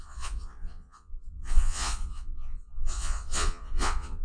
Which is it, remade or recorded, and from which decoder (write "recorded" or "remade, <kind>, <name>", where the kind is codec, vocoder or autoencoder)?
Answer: remade, vocoder, Vocos